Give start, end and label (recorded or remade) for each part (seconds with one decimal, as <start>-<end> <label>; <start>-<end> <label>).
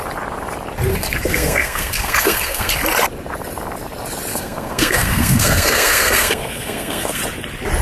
0.0-0.9 recorded; 0.9-2.7 remade; 2.7-4.3 recorded; 4.3-7.2 remade; 7.2-7.8 recorded